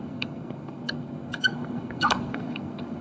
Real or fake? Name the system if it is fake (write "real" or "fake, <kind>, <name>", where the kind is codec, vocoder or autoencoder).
fake, codec, SNAC